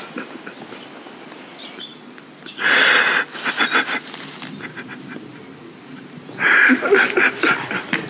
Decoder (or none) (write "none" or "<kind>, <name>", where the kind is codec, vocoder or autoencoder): none